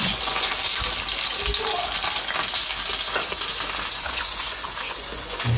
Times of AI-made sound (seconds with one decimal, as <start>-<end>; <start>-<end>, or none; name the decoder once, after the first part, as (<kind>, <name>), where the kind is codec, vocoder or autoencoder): 0.0-0.5 (vocoder, Vocos); 3.9-5.6